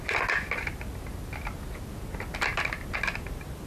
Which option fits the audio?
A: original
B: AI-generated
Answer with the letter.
A